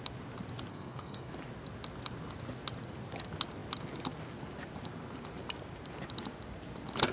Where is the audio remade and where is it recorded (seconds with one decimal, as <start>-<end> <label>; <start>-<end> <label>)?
0.0-0.7 recorded; 0.7-1.3 remade; 1.3-7.1 recorded